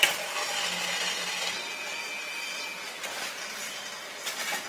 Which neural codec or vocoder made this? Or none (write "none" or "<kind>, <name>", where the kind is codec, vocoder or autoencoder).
none